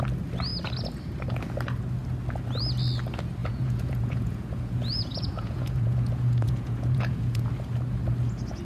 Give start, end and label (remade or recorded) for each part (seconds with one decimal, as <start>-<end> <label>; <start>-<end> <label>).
0.0-3.4 recorded; 3.4-7.5 remade; 7.5-8.6 recorded